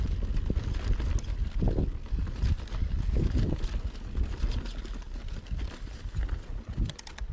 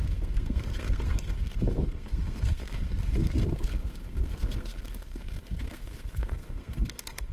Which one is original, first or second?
first